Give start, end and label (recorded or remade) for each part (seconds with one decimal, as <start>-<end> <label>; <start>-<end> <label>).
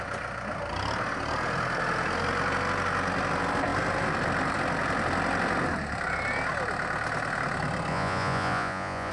0.0-7.9 recorded; 7.9-9.1 remade